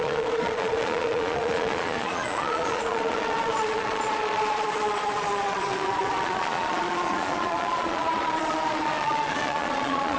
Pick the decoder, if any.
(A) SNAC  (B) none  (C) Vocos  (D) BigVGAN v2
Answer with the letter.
C